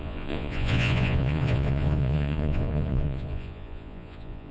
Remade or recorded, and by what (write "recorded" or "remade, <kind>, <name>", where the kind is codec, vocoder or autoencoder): remade, vocoder, Vocos